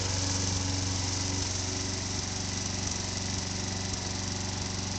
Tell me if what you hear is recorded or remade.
recorded